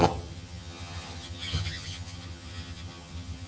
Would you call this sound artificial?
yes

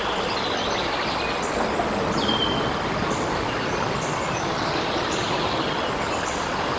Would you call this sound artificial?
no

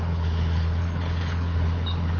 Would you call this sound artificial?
yes